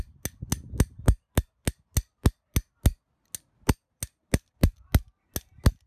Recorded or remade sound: recorded